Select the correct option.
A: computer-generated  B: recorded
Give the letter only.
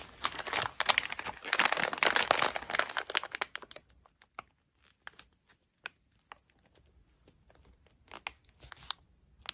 B